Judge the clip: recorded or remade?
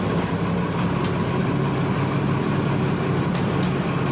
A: recorded